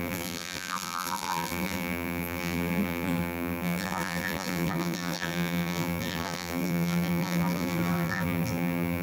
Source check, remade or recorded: remade